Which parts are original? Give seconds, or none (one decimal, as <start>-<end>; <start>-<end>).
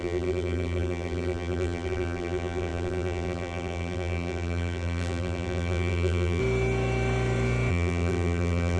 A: 6.4-7.7